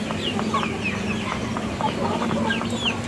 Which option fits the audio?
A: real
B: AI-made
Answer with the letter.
A